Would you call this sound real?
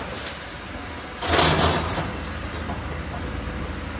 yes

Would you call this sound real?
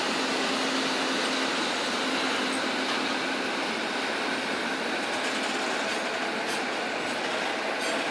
yes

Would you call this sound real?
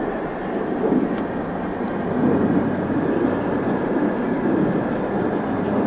yes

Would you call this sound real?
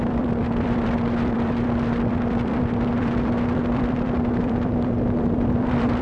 no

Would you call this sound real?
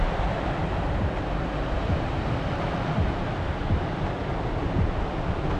yes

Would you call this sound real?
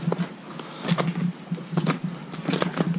yes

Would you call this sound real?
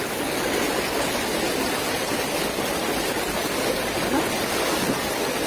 yes